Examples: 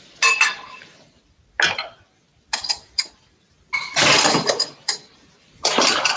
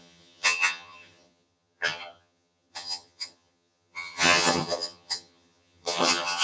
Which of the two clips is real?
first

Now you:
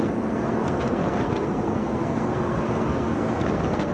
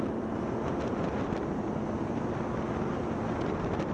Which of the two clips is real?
second